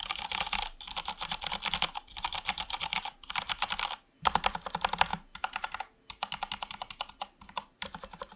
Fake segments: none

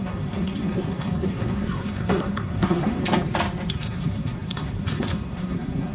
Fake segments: 0.0-3.0 (codec, SNAC); 3.7-5.9

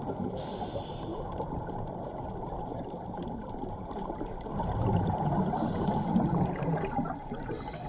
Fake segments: 1.1-2.2 (vocoder, BigVGAN v2); 2.7-4.2